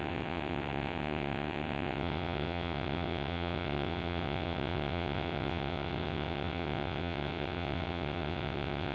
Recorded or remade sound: remade